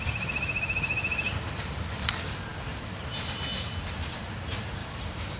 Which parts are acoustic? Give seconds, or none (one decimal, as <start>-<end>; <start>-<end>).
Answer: 0.0-4.8